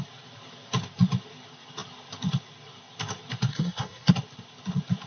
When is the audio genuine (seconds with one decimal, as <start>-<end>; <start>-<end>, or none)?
0.0-3.5; 4.1-5.1